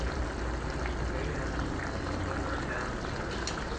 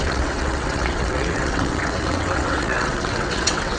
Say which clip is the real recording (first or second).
first